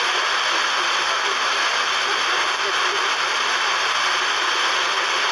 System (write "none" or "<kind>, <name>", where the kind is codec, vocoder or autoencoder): none